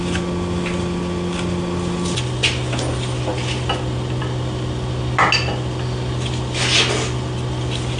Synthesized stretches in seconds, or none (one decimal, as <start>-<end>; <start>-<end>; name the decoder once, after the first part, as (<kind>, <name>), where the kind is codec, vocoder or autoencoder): none